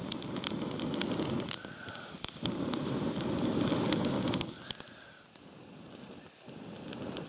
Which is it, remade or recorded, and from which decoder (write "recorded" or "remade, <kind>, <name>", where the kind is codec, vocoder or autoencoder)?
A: recorded